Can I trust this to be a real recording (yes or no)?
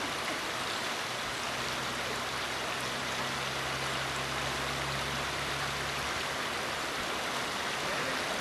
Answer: yes